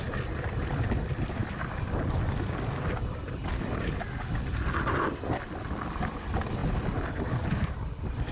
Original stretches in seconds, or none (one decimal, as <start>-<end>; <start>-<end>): 0.0-8.3